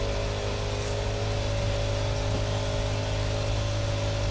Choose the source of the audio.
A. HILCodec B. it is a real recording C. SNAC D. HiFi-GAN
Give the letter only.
B